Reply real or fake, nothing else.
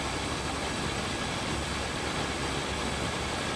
fake